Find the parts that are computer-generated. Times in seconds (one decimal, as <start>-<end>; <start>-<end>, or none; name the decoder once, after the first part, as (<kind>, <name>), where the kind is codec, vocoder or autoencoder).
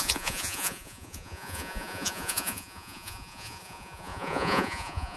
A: 0.0-5.2 (vocoder, Vocos)